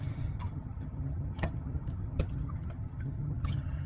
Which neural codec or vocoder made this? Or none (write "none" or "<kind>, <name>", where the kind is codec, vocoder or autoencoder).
vocoder, HiFi-GAN